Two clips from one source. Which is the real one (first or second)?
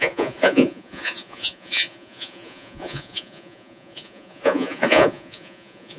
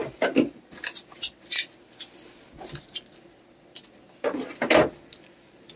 second